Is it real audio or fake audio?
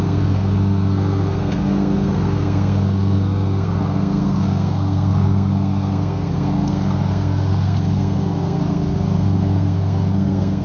fake